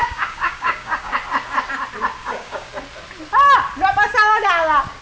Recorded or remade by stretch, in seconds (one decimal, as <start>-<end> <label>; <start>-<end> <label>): 0.0-1.1 remade; 1.1-2.2 recorded; 2.2-2.7 remade; 2.7-5.0 recorded